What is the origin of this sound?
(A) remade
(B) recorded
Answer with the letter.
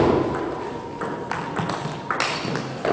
B